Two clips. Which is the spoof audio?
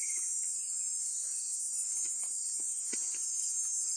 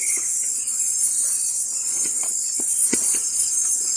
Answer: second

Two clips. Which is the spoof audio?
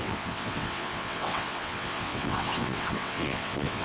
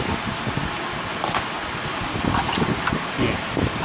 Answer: first